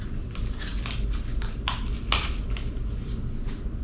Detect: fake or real real